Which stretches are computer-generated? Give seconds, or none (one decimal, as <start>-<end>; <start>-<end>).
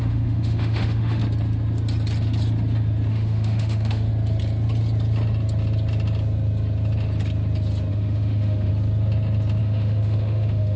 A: 0.0-1.2; 3.1-4.1; 7.9-8.7; 9.6-10.8